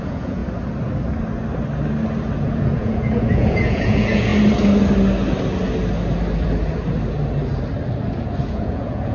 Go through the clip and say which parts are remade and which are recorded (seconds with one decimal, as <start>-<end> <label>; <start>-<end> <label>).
0.0-0.4 remade; 0.4-2.4 recorded; 2.4-4.3 remade; 4.3-8.5 recorded; 8.5-9.1 remade